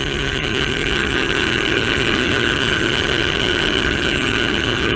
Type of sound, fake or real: fake